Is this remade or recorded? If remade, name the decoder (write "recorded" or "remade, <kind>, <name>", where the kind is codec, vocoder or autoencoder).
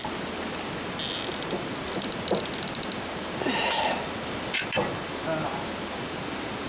recorded